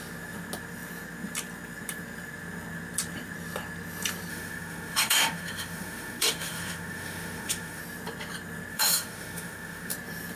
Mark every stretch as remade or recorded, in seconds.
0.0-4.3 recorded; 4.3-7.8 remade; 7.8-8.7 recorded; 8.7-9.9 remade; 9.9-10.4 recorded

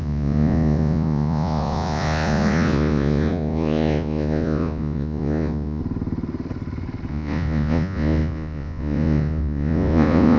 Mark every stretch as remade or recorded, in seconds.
0.0-5.8 remade; 5.8-7.1 recorded; 7.1-10.4 remade